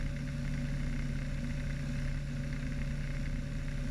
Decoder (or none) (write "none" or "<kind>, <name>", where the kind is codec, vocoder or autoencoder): none